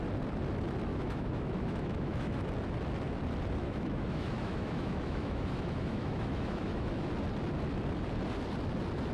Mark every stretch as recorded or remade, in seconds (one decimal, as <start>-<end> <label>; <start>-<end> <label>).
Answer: 0.0-0.9 recorded; 0.9-2.5 remade; 2.5-3.6 recorded; 3.6-7.1 remade; 7.1-9.1 recorded